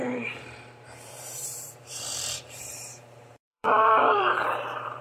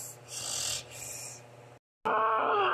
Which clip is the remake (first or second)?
first